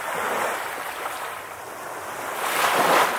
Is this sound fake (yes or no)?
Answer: no